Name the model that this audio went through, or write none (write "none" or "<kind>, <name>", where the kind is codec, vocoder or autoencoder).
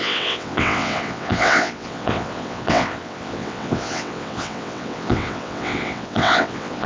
vocoder, WaveNeXt